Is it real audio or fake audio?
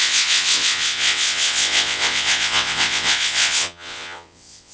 fake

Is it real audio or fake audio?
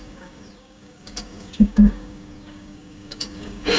fake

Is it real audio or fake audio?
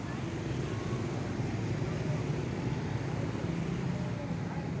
real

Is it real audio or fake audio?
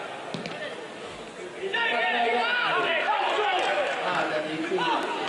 real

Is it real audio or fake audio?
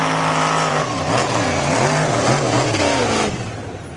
real